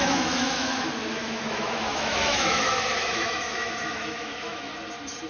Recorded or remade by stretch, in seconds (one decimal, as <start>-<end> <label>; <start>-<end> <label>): 0.0-4.7 remade; 4.7-5.3 recorded